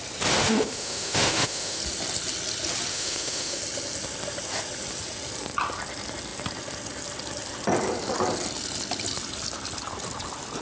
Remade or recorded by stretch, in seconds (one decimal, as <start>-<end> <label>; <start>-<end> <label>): 0.0-0.4 recorded; 0.4-1.8 remade; 1.8-2.9 recorded; 2.9-3.6 remade; 3.6-10.6 recorded